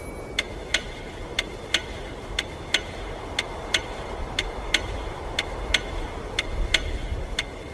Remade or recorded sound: recorded